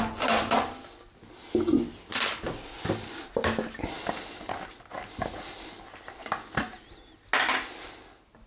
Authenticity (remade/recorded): recorded